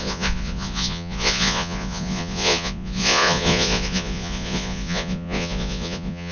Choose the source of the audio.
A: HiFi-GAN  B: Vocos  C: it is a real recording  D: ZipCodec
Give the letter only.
B